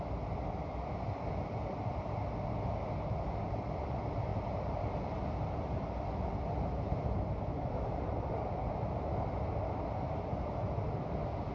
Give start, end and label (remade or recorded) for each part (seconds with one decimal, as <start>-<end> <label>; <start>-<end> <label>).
0.0-4.3 recorded; 4.3-5.2 remade; 5.2-7.5 recorded; 7.5-8.9 remade; 8.9-11.5 recorded

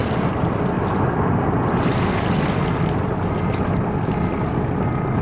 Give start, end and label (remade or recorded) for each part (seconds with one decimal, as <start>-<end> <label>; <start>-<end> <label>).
0.0-5.2 recorded

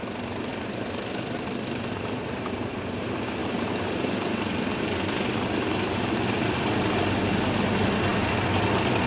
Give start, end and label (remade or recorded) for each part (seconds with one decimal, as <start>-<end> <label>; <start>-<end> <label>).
0.0-0.5 recorded; 0.5-2.8 remade; 2.8-3.4 recorded; 3.4-6.7 remade; 6.7-9.1 recorded

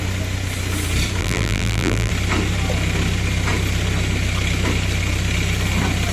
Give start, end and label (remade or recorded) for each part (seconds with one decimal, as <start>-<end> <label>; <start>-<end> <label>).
0.0-1.2 recorded; 1.2-2.1 remade; 2.1-6.1 recorded